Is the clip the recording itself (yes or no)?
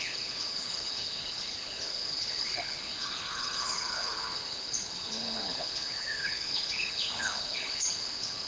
no